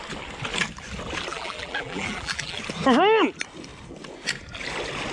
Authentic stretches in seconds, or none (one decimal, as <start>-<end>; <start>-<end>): 0.0-1.3; 2.6-5.1